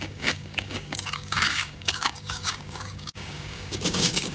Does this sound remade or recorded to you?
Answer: remade